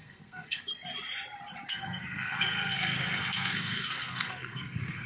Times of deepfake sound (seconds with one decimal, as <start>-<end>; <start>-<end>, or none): 0.0-0.7; 1.7-5.1